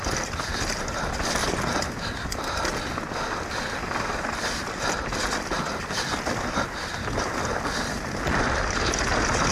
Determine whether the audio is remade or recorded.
recorded